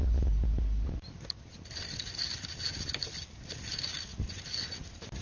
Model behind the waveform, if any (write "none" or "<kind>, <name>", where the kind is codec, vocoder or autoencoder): none